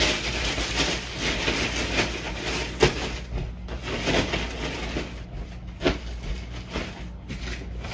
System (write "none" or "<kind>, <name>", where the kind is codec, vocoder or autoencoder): none